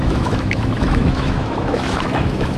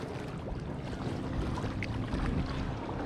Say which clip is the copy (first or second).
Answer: first